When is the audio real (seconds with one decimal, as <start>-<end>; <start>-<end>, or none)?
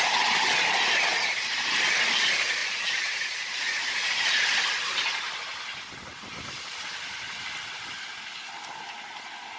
0.0-1.1; 1.7-2.6; 4.7-6.1; 7.3-9.6